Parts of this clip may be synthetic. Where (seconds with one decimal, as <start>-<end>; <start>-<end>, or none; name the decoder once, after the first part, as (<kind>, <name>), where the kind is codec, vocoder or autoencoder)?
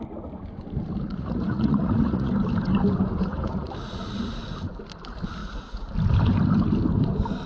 1.1-2.3 (vocoder, Vocos); 3.3-4.4; 5.4-5.9